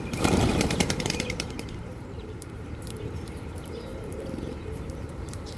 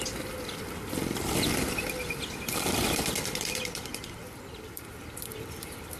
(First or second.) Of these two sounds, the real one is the second